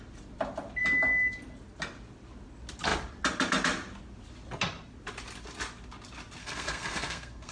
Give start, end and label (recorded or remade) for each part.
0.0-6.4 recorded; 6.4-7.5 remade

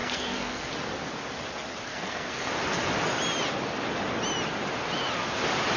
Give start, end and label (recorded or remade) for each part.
0.0-0.7 remade; 0.7-1.9 recorded; 1.9-2.5 remade; 2.5-5.8 recorded

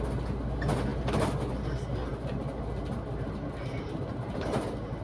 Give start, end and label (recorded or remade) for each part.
0.0-5.0 recorded

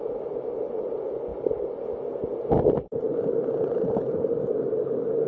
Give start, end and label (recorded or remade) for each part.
0.0-5.3 recorded